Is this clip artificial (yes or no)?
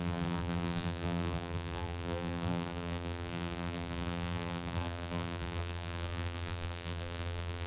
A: yes